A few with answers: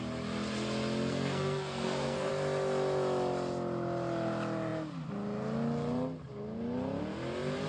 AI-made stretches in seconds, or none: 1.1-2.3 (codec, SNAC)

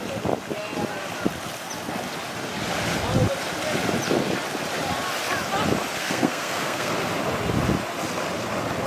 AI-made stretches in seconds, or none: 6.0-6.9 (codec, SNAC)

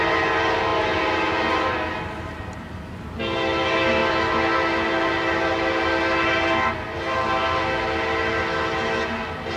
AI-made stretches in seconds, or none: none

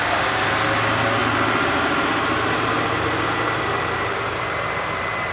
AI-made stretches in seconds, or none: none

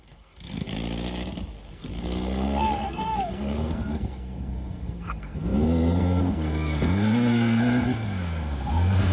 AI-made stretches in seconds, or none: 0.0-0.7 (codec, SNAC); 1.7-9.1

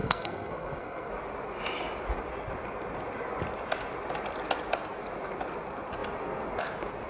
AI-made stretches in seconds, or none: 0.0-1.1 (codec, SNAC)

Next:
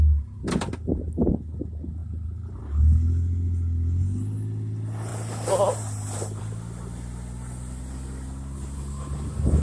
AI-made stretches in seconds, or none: none

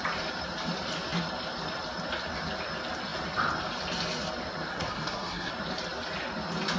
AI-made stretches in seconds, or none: 4.7-5.5 (codec, SNAC)